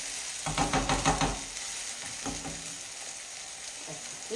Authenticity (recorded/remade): recorded